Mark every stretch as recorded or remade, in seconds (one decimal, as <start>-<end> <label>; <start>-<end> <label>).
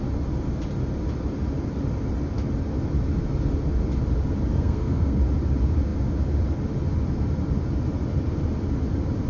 0.0-4.5 recorded; 4.5-5.2 remade; 5.2-9.3 recorded